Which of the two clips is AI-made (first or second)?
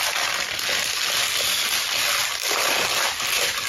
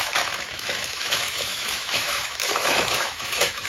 second